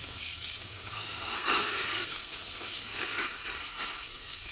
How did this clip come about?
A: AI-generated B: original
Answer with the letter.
A